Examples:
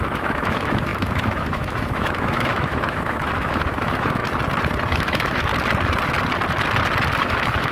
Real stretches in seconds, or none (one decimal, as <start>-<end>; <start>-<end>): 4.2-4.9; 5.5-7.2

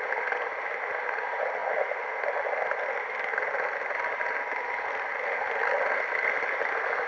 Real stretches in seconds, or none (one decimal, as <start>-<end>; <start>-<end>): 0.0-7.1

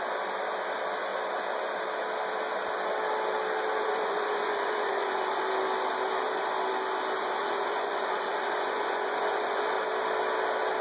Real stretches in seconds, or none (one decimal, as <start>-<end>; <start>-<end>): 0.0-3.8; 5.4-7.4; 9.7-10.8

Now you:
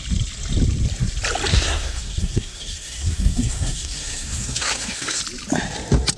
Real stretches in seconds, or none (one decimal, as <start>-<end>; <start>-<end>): 0.0-1.5; 5.2-6.2

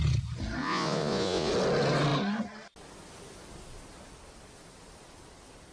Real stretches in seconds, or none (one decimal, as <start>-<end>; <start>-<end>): 0.0-0.6; 1.5-5.7

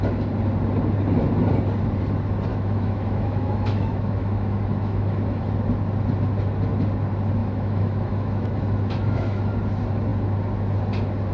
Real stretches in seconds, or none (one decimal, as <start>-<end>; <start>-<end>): 0.0-2.5; 5.4-7.4; 9.4-11.3